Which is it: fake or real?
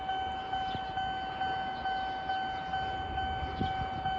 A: real